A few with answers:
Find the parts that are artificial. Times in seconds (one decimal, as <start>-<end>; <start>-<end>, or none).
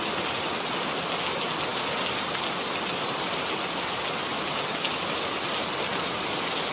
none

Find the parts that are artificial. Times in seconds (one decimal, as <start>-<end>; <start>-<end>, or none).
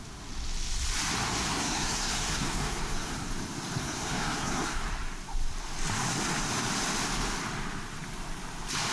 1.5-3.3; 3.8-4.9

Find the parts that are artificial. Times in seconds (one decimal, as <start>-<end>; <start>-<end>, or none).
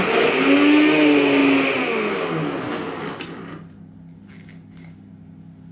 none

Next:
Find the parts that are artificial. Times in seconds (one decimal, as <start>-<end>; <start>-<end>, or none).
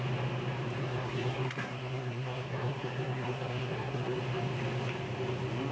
0.8-4.2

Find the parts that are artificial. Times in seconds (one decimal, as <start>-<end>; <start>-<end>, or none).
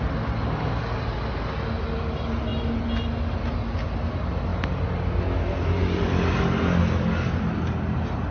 none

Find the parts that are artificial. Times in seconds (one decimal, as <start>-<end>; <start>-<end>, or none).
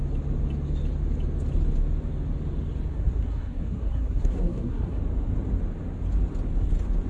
2.9-5.0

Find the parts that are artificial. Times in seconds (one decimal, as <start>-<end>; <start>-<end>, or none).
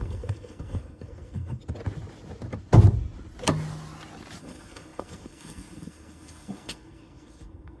0.0-1.6; 4.4-7.8